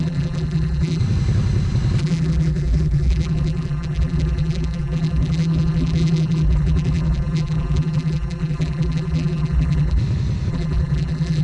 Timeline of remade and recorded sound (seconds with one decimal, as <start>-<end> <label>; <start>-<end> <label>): 0.0-1.0 remade; 1.0-2.0 recorded; 2.0-10.0 remade; 10.0-10.5 recorded; 10.5-11.4 remade